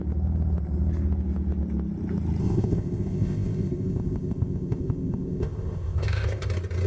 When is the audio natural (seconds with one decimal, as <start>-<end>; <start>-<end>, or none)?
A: 0.0-2.4; 6.5-6.9